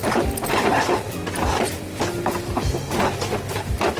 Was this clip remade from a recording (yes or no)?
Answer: no